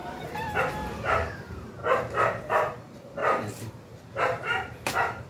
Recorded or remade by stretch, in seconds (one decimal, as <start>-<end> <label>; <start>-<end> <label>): 0.0-1.8 remade; 1.8-2.5 recorded; 2.5-3.2 remade; 3.2-4.2 recorded; 4.2-5.3 remade